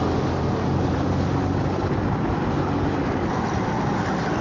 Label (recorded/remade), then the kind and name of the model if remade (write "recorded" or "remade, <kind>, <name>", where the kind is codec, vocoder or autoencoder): recorded